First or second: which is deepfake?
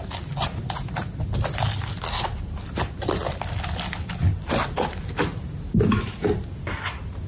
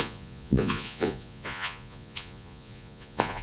second